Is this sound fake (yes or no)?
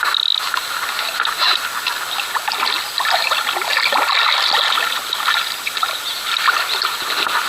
no